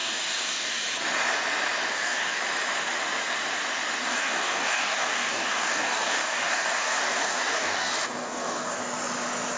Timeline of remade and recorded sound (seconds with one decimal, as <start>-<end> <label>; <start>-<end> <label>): 0.0-0.7 remade; 0.7-1.9 recorded; 1.9-2.4 remade; 2.4-4.0 recorded; 4.0-8.8 remade; 8.8-9.6 recorded